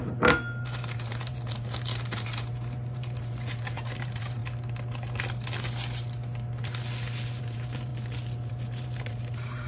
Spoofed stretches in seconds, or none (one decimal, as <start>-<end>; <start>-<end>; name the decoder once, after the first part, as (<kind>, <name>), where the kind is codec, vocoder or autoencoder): 0.0-4.4 (vocoder, BigVGAN v2); 7.4-7.9; 8.5-9.7